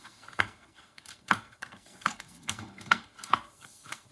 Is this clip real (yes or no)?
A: no